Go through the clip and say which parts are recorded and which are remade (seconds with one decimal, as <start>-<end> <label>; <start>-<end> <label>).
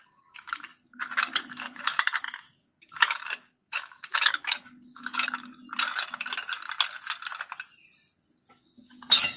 0.0-5.6 remade; 5.6-8.5 recorded; 8.5-9.4 remade